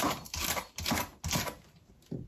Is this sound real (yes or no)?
yes